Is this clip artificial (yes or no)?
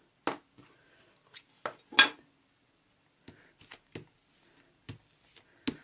no